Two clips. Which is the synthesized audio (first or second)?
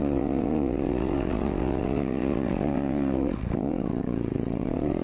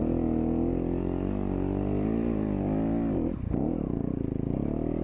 first